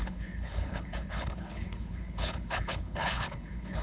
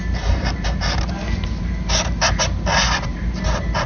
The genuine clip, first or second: second